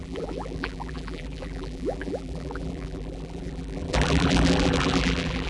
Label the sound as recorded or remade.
remade